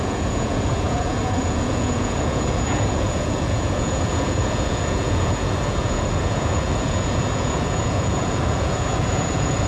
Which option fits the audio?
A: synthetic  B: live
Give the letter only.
A